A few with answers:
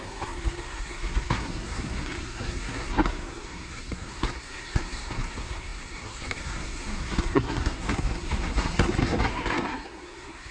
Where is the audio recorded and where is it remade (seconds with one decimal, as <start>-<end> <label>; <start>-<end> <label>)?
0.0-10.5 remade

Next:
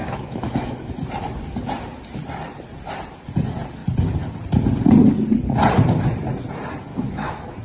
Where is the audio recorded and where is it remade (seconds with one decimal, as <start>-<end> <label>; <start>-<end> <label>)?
0.0-0.9 remade; 0.9-6.9 recorded; 6.9-7.6 remade

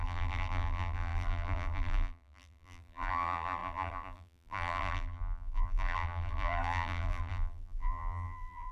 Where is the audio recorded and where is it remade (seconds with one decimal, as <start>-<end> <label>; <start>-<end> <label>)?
0.0-8.7 remade

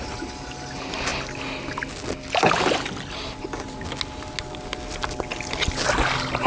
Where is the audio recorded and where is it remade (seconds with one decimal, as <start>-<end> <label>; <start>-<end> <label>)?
0.0-6.5 recorded